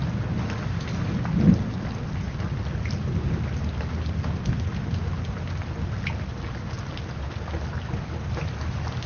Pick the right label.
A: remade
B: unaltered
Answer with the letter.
B